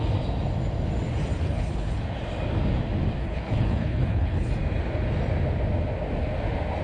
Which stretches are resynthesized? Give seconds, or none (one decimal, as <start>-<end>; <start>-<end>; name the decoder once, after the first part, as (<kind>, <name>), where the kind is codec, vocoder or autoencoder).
1.4-2.0 (codec, HILCodec); 3.2-4.5